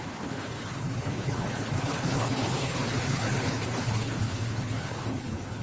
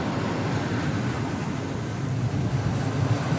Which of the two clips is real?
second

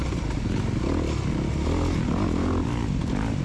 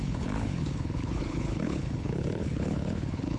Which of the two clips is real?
first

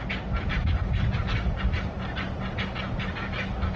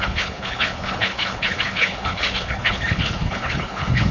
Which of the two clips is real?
first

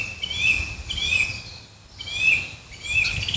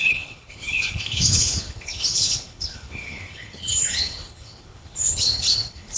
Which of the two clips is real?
first